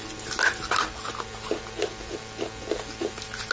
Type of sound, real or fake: real